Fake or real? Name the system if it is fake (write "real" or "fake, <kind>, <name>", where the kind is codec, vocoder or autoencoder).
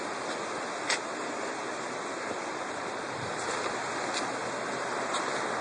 real